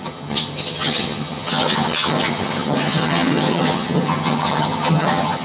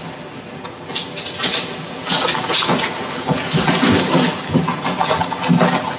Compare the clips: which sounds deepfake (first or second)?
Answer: first